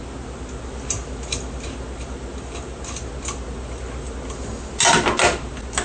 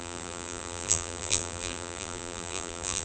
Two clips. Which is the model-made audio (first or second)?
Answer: second